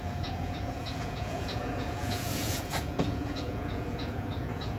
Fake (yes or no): yes